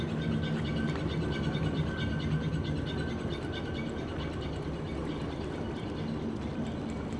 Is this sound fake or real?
real